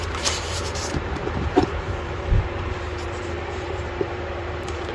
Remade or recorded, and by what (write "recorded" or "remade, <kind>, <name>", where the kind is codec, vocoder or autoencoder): remade, vocoder, BigVGAN v2